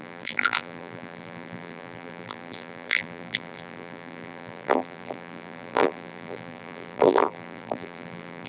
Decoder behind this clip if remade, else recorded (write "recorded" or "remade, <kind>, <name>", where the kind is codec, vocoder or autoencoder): remade, vocoder, BigVGAN v2